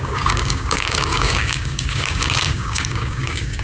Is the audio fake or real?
fake